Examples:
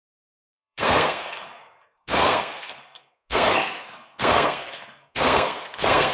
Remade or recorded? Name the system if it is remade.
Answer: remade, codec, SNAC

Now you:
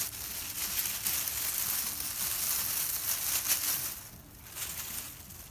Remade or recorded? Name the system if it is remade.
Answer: recorded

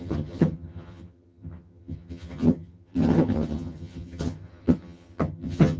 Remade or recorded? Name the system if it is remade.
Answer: remade, vocoder, HiFi-GAN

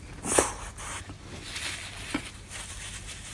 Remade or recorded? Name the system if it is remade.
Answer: recorded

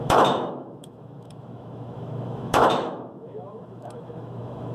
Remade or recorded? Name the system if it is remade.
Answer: remade, autoencoder, DAC-VAE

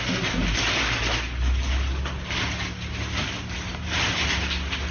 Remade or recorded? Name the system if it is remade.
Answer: recorded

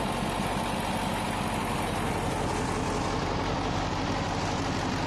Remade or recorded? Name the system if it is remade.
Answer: recorded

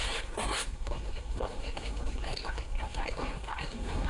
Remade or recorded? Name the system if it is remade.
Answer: remade, codec, SNAC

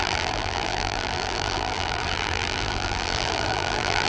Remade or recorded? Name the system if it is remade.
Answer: remade, vocoder, BigVGAN v2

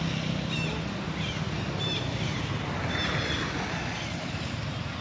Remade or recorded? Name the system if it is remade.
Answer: recorded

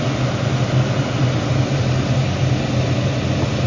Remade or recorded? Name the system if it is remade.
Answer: recorded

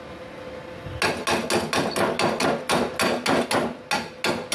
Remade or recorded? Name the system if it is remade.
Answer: recorded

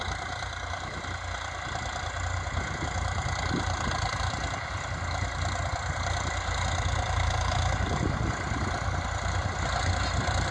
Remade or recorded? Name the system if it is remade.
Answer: recorded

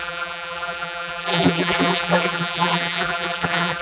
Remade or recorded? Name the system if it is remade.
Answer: remade, vocoder, BigVGAN v2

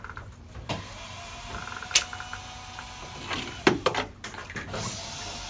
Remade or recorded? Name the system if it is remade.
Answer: recorded